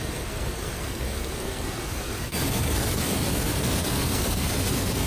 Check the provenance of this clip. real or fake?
fake